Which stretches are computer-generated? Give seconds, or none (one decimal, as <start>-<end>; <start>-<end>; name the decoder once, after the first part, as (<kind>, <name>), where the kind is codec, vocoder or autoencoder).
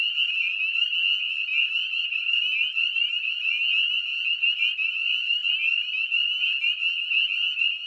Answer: none